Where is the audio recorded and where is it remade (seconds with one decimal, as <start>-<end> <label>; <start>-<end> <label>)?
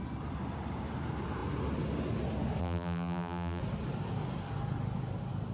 0.0-2.6 recorded; 2.6-3.6 remade; 3.6-5.5 recorded